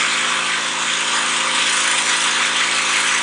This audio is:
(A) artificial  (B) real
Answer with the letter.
B